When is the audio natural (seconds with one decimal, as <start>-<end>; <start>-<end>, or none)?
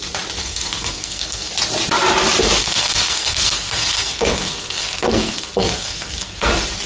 0.0-0.4; 1.5-2.6; 6.5-6.9